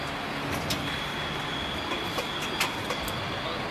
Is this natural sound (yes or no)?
yes